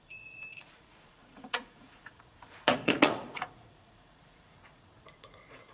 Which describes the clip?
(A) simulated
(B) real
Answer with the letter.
A